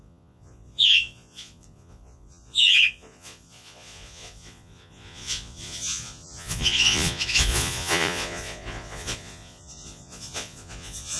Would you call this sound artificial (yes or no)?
yes